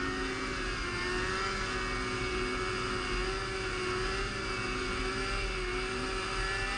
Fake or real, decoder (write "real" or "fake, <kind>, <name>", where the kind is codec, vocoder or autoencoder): real